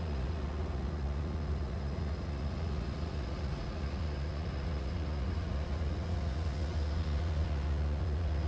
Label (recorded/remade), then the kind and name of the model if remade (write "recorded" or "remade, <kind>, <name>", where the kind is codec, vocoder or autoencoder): remade, vocoder, Vocos